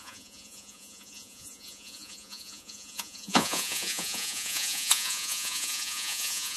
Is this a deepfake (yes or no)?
yes